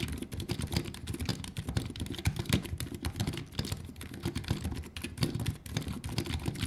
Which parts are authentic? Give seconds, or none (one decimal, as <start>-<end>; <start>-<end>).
0.0-1.3; 3.7-6.7